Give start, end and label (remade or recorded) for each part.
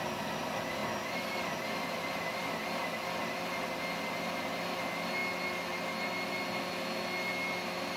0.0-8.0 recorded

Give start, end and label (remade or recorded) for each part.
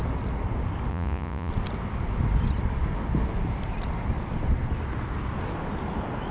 0.0-0.9 recorded; 0.9-1.5 remade; 1.5-6.3 recorded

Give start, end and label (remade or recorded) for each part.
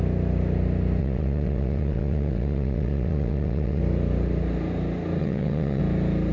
0.0-1.0 recorded; 1.0-3.8 remade; 3.8-5.2 recorded; 5.2-5.8 remade; 5.8-6.3 recorded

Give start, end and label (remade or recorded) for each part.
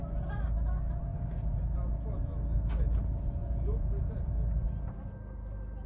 0.0-1.1 recorded; 1.1-1.6 remade; 1.6-3.4 recorded; 3.4-4.3 remade; 4.3-5.9 recorded